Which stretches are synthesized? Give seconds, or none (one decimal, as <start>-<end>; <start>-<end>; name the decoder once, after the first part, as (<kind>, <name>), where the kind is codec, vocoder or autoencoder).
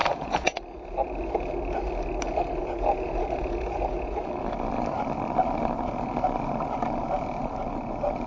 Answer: 0.0-0.6 (vocoder, Vocos); 2.6-4.3